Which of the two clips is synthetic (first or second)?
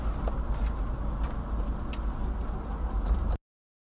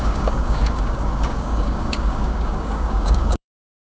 second